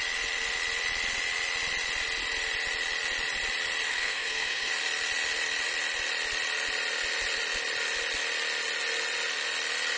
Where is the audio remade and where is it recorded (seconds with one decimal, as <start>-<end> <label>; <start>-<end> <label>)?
0.0-3.9 recorded; 3.9-4.7 remade; 4.7-10.0 recorded